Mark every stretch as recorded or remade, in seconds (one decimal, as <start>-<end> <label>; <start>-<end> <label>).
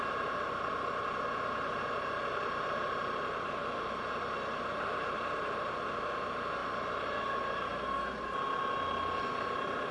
0.0-9.9 recorded